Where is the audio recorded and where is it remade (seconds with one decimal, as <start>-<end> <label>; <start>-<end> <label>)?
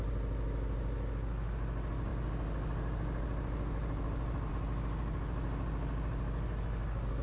0.0-7.2 recorded